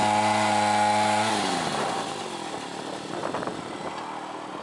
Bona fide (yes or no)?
yes